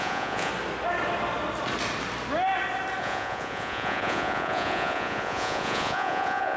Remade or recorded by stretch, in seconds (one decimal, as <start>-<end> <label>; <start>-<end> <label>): 0.0-0.5 remade; 0.5-3.0 recorded; 3.0-6.6 remade